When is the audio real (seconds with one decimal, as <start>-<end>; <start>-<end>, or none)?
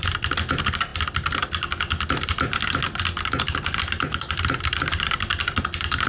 0.0-6.1